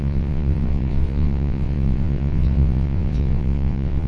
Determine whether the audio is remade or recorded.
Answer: remade